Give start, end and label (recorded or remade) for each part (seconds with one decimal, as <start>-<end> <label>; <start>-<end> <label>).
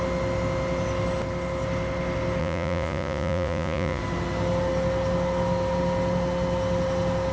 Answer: 0.0-2.4 recorded; 2.4-4.0 remade; 4.0-7.3 recorded